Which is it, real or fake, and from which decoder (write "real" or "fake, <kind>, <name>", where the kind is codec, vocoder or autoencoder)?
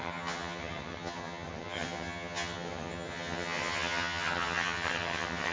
fake, vocoder, HiFi-GAN